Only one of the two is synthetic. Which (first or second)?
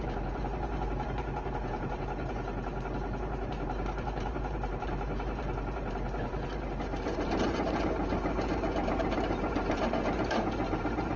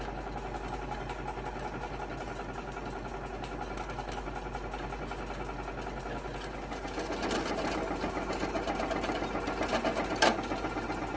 first